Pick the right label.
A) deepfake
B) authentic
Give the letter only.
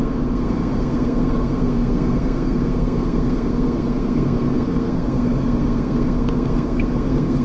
A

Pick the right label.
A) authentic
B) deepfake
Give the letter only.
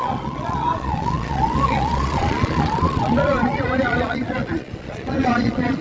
B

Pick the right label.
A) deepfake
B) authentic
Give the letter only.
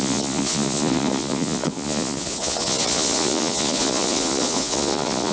A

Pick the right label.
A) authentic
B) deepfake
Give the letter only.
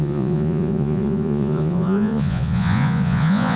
B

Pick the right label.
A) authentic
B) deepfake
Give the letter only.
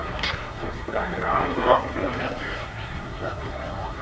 B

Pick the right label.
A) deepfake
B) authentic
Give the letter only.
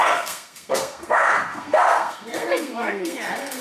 A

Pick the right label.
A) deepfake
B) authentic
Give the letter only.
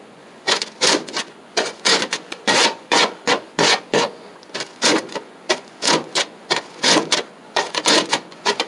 A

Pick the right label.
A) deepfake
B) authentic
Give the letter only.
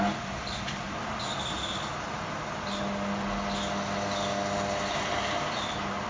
B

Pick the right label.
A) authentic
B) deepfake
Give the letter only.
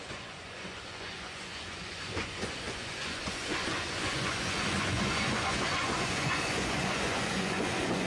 B